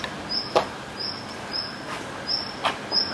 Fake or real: real